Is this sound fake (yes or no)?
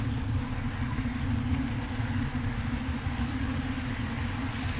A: no